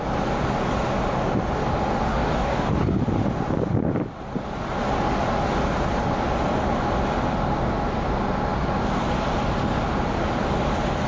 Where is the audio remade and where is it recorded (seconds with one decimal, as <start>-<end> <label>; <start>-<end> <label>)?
0.0-2.1 recorded; 2.1-3.0 remade; 3.0-11.1 recorded